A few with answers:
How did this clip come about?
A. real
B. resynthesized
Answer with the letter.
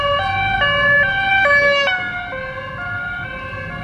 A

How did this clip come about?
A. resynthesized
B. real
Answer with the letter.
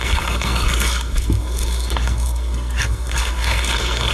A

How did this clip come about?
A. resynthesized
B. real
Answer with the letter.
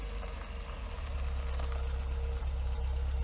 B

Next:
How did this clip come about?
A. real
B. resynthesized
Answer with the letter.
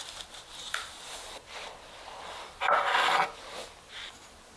A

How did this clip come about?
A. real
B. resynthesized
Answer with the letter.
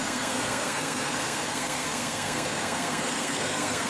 B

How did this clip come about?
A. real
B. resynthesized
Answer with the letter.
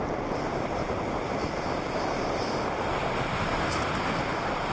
A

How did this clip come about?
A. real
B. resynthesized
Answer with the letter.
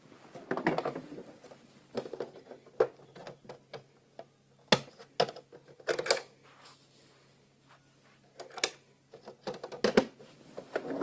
A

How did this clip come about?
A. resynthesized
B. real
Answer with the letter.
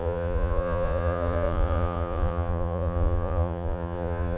A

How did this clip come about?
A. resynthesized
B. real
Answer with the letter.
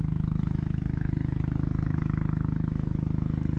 A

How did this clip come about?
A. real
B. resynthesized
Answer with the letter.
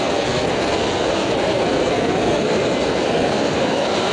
B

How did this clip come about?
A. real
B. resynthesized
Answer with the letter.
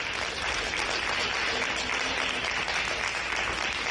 A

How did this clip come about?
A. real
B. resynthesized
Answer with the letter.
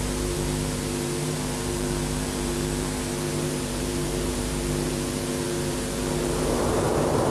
B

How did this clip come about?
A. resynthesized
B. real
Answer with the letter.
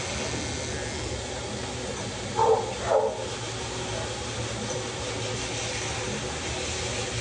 B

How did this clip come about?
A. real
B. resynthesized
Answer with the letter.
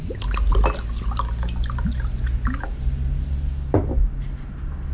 A